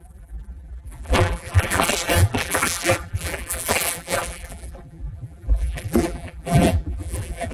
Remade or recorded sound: remade